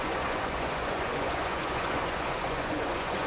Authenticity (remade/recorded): remade